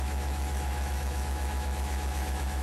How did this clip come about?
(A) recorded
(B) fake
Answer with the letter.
B